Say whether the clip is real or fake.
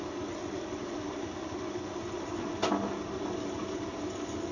real